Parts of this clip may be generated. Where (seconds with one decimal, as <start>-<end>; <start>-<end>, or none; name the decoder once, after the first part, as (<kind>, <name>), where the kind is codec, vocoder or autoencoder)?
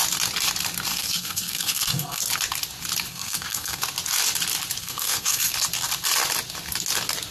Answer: 0.9-2.2 (codec, SNAC); 3.1-3.8; 4.8-5.4